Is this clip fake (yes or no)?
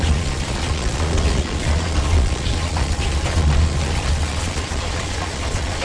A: yes